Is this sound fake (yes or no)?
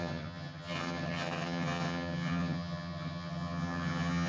yes